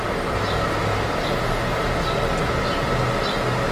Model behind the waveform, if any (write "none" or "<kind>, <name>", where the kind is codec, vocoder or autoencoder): none